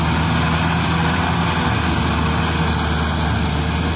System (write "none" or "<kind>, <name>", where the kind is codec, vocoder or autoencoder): none